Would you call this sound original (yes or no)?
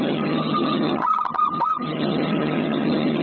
no